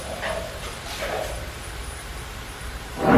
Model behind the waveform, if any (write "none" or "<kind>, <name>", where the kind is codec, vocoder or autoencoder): vocoder, BigVGAN v2